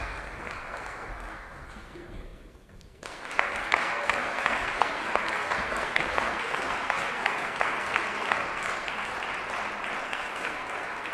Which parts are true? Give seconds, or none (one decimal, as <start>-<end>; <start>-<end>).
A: 9.1-10.0